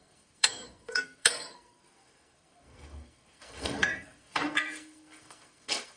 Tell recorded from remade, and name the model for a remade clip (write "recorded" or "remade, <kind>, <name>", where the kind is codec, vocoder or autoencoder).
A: remade, codec, SNAC